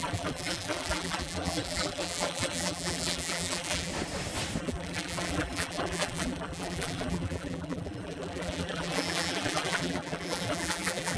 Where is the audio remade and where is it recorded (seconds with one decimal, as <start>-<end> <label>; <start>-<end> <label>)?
0.0-3.9 remade; 3.9-4.6 recorded; 4.6-11.2 remade